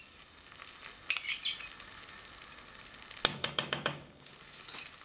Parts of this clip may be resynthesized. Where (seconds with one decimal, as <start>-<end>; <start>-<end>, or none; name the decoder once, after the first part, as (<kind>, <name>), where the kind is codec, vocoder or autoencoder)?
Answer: 3.3-4.3 (codec, DAC)